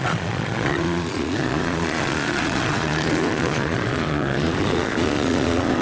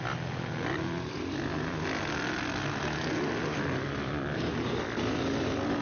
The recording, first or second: second